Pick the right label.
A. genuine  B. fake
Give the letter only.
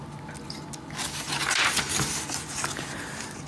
A